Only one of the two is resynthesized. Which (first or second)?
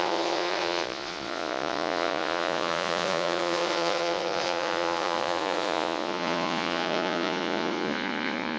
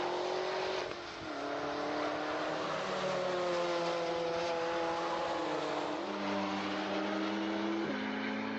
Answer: first